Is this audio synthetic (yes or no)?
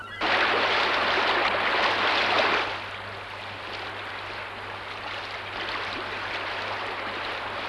no